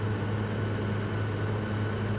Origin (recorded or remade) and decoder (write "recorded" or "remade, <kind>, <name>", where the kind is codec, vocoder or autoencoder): recorded